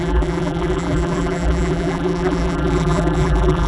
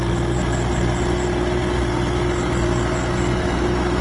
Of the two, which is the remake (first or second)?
first